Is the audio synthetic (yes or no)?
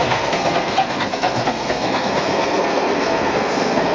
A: yes